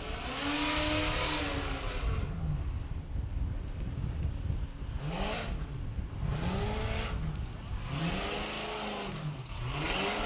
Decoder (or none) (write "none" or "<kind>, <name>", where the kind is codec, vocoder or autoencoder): none